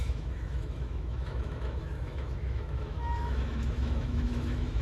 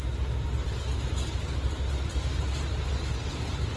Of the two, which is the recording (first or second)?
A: second